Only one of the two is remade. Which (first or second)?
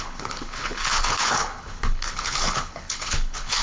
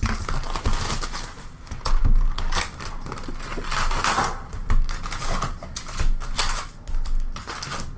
first